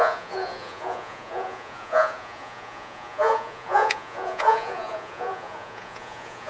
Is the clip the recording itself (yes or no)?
no